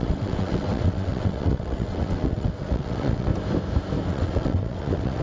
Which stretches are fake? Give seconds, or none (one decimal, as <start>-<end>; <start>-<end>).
0.0-3.3; 4.1-5.2

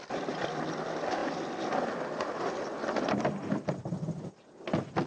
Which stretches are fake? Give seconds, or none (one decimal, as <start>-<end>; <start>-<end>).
none